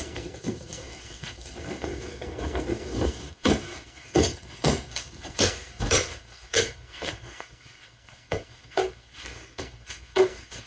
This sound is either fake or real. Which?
fake